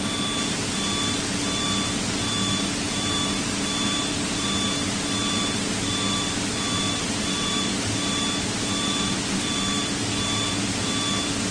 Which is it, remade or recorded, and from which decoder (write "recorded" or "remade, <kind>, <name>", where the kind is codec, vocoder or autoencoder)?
recorded